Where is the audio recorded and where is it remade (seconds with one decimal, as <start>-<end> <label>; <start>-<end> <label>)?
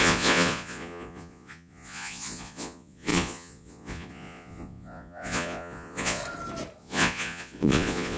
0.0-6.2 remade; 6.2-6.8 recorded; 6.8-8.2 remade